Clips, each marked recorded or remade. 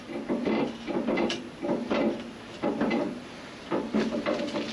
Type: recorded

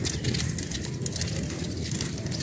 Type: recorded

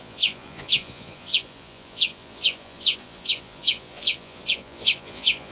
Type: remade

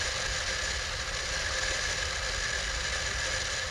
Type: recorded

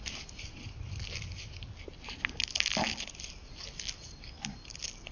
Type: recorded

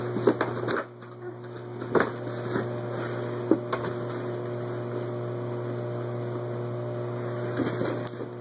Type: recorded